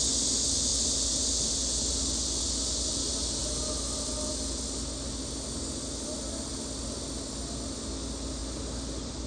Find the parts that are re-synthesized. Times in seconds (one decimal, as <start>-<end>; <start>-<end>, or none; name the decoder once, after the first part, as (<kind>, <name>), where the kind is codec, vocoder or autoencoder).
none